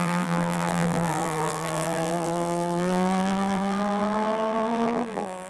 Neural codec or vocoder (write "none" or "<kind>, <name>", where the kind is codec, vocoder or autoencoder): vocoder, BigVGAN v2